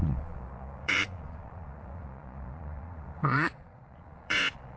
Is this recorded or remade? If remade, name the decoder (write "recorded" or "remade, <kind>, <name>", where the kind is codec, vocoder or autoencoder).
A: remade, vocoder, Vocos